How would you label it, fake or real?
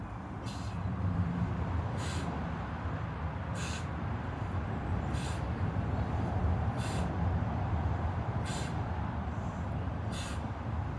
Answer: fake